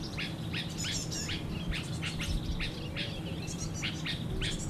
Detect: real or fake real